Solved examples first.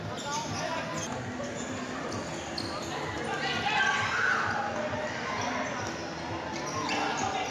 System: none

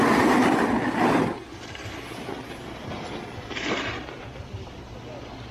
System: none